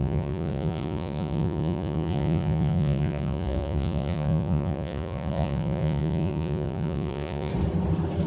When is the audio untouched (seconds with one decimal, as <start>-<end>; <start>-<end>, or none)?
7.5-8.3